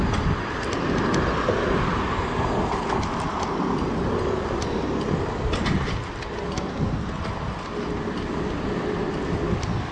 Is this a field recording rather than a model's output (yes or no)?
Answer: yes